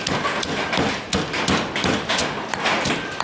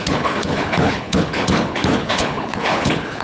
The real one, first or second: first